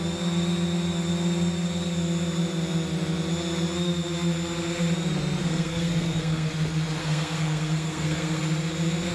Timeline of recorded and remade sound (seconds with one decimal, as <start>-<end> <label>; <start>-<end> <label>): 0.0-5.4 recorded; 5.4-6.5 remade; 6.5-7.0 recorded; 7.0-8.4 remade; 8.4-9.1 recorded